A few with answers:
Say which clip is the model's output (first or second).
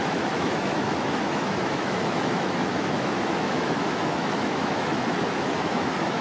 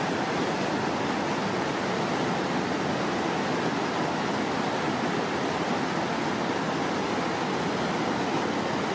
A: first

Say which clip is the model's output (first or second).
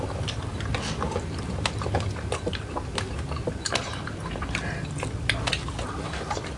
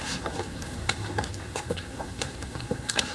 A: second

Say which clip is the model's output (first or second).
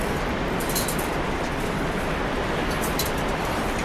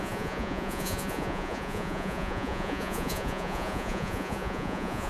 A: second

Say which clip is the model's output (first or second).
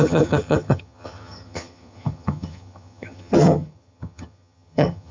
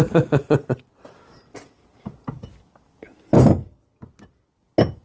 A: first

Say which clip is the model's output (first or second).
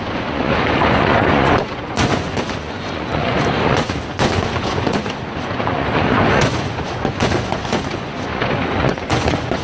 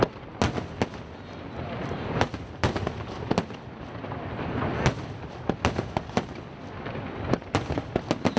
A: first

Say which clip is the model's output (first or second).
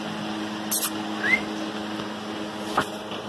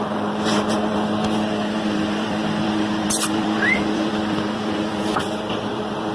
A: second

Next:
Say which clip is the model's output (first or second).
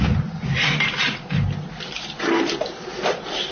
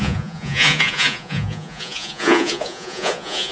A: second